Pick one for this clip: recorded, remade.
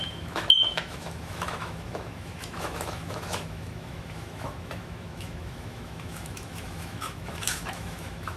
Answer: remade